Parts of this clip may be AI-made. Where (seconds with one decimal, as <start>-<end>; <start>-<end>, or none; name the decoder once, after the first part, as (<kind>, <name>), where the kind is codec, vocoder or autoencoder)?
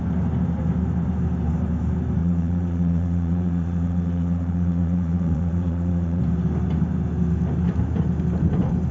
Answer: 2.2-6.2 (vocoder, Vocos)